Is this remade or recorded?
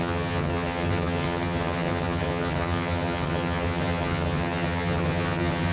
remade